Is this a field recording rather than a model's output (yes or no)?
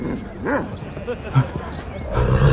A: yes